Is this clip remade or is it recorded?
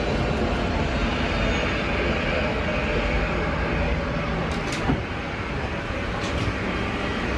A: recorded